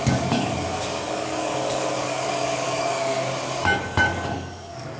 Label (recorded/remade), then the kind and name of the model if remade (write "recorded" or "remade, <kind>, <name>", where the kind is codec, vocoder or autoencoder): remade, codec, DAC